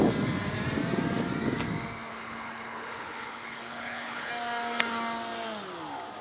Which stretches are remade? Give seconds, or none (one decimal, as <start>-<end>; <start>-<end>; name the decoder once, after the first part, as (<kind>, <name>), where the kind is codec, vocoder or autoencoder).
2.1-4.3 (codec, HILCodec)